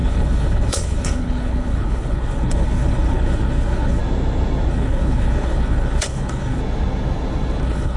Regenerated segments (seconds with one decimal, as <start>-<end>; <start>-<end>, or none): 0.0-4.0; 4.7-6.6; 7.6-8.0